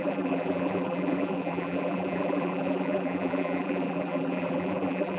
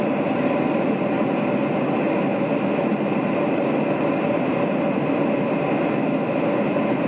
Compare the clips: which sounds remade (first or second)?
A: first